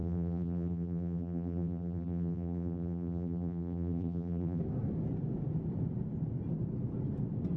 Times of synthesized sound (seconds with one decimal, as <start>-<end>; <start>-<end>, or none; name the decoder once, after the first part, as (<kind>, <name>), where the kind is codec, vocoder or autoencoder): 0.0-4.6 (vocoder, BigVGAN v2)